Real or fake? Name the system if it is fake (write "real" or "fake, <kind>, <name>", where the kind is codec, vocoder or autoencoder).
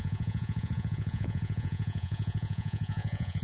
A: fake, vocoder, Vocos